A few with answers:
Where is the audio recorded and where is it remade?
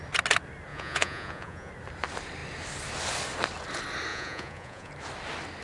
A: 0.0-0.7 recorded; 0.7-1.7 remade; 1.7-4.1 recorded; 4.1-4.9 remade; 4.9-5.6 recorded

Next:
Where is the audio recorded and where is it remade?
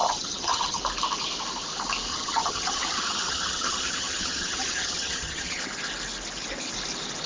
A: 0.0-0.8 remade; 0.8-2.1 recorded; 2.1-5.6 remade; 5.6-7.3 recorded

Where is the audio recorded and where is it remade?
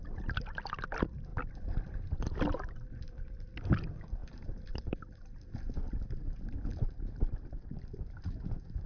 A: 0.0-1.3 recorded; 1.3-2.3 remade; 2.3-6.7 recorded; 6.7-7.3 remade; 7.3-8.9 recorded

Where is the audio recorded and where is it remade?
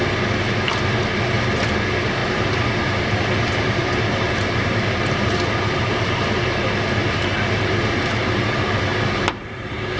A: 0.0-2.2 recorded; 2.2-6.2 remade; 6.2-7.3 recorded; 7.3-8.0 remade; 8.0-8.9 recorded; 8.9-10.0 remade